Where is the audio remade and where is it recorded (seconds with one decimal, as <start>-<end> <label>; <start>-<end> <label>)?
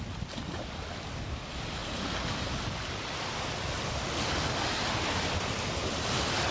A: 0.0-6.5 recorded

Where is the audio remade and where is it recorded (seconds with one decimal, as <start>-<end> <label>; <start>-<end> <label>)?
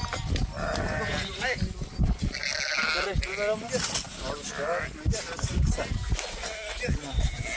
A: 0.0-7.6 recorded